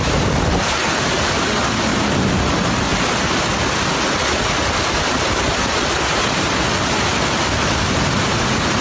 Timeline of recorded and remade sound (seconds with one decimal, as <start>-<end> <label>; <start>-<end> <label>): 0.0-7.1 recorded; 7.1-8.2 remade; 8.2-8.8 recorded